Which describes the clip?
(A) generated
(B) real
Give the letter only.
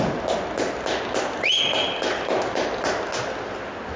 B